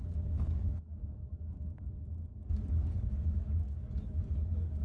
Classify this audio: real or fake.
fake